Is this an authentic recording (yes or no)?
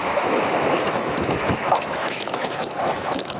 no